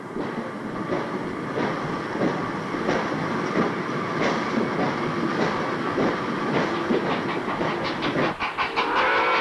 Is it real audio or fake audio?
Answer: real